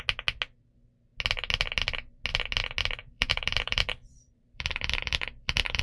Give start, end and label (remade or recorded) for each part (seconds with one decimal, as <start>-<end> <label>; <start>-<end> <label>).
0.0-3.0 recorded; 3.0-5.8 remade

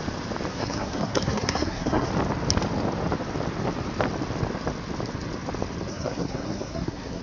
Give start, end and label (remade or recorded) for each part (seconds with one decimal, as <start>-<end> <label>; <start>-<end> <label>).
0.0-0.5 recorded; 0.5-2.1 remade; 2.1-5.9 recorded; 5.9-7.2 remade

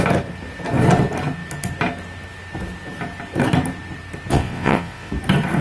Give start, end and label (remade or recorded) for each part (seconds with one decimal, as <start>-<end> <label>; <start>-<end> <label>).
0.0-4.3 recorded; 4.3-5.1 remade; 5.1-5.6 recorded

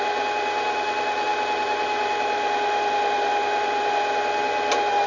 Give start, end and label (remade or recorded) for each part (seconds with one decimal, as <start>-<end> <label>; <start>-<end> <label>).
0.0-5.1 recorded

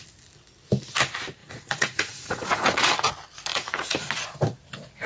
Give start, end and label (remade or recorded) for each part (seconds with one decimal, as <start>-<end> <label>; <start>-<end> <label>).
0.0-1.4 recorded; 1.4-3.1 remade; 3.1-3.5 recorded; 3.5-4.1 remade; 4.1-5.1 recorded

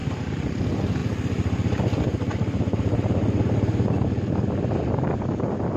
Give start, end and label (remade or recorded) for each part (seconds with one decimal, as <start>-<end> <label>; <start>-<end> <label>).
0.0-5.8 recorded